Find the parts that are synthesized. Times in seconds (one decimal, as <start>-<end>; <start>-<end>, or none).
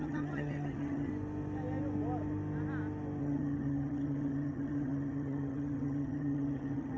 0.0-1.1; 3.2-7.0